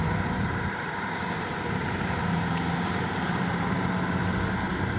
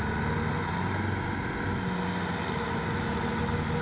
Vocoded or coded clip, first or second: first